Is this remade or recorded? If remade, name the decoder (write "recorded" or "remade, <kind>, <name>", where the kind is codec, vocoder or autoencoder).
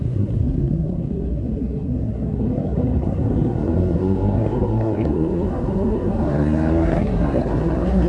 remade, codec, SNAC